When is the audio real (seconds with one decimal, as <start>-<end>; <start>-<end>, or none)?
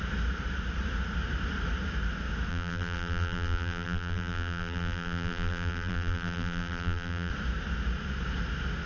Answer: 0.0-2.5; 7.3-8.9